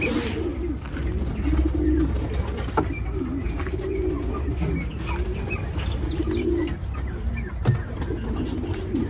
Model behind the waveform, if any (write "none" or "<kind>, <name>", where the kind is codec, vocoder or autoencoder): none